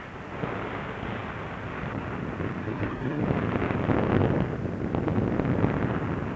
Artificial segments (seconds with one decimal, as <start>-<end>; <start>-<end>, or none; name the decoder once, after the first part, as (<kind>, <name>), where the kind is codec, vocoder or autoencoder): 2.6-3.2 (codec, SNAC)